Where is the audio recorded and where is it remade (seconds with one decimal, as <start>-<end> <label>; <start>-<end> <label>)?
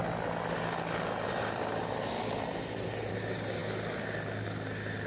0.0-5.1 recorded